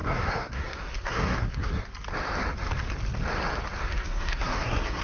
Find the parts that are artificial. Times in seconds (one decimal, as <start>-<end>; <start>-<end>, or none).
0.0-1.8; 3.8-5.0